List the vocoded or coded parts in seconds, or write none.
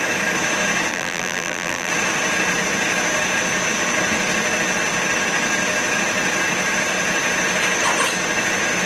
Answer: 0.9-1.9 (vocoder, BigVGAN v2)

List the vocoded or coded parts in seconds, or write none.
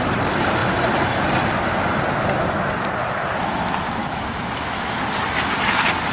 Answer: 4.0-5.0 (autoencoder, DAC-VAE)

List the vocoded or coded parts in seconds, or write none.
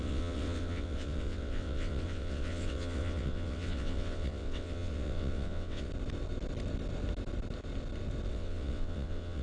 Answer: 0.0-5.9 (vocoder, WaveNeXt); 8.3-9.4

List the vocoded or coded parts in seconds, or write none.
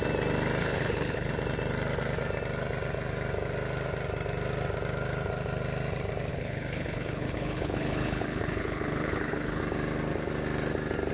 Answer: 0.6-1.3 (codec, HILCodec); 6.3-9.6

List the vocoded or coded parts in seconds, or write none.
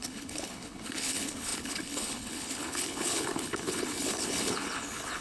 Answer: 0.0-5.2 (codec, HILCodec)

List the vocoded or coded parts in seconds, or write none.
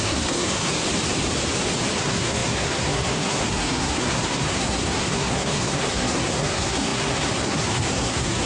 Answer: 0.0-0.7 (codec, SNAC); 2.0-8.5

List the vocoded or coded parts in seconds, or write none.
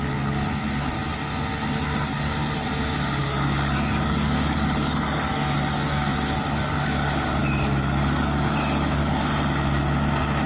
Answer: 3.2-5.3 (codec, DAC); 7.4-9.2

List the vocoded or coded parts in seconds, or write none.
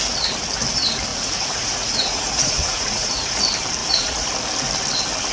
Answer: 1.1-3.4 (vocoder, Vocos); 3.8-4.3